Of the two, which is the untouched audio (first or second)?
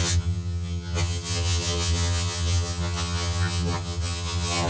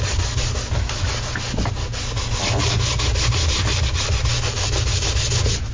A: second